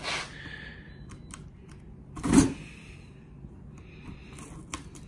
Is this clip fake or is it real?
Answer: real